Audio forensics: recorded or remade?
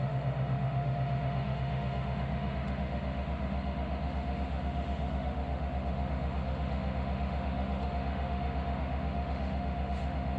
remade